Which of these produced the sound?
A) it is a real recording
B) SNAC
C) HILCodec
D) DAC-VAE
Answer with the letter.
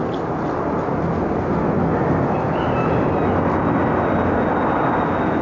A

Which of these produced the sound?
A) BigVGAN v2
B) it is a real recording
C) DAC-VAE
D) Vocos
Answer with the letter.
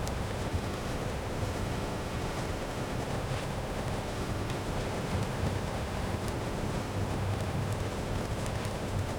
C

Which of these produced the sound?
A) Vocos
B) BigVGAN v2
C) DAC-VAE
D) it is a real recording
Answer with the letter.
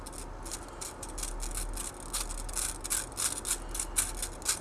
D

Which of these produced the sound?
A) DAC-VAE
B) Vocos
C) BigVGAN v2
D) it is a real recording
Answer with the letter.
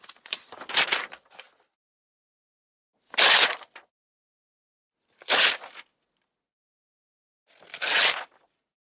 D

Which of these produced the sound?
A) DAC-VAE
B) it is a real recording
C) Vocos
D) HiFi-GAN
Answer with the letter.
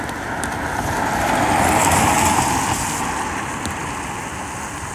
B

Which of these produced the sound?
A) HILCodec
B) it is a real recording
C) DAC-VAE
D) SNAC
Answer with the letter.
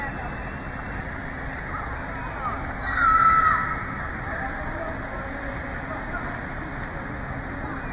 B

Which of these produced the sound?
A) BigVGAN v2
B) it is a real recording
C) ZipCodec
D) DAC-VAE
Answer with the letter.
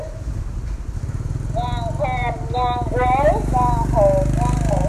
B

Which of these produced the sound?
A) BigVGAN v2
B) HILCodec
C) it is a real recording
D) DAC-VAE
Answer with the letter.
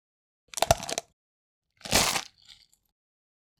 C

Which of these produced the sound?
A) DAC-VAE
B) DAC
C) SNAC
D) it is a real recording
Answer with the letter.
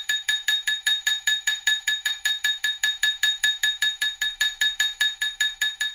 A